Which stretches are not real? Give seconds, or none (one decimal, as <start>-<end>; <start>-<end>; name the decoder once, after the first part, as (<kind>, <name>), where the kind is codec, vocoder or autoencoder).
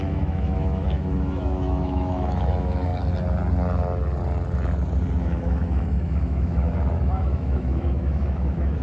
0.0-2.9 (autoencoder, DAC-VAE); 5.2-8.8